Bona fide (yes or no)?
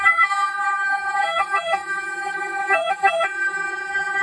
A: no